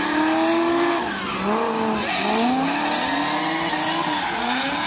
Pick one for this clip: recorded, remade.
recorded